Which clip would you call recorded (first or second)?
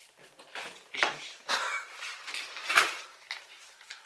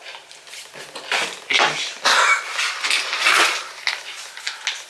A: second